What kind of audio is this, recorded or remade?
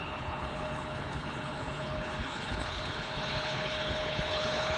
remade